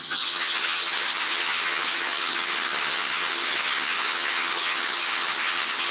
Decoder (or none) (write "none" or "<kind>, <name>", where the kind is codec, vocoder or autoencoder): vocoder, HiFi-GAN